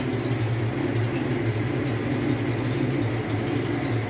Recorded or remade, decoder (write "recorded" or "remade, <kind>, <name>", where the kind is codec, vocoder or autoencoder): recorded